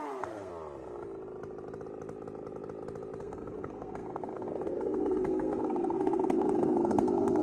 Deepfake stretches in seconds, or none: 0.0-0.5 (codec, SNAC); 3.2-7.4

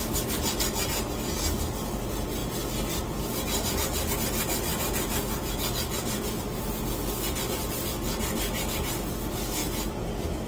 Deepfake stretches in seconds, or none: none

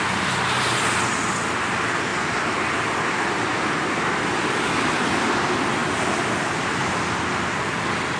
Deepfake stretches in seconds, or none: none

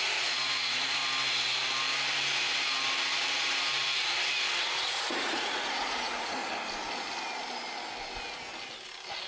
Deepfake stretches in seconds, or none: 0.0-1.0 (vocoder, Vocos); 4.6-6.4

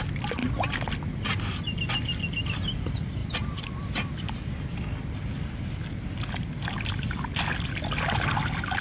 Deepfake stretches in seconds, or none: 0.4-0.9 (vocoder, BigVGAN v2)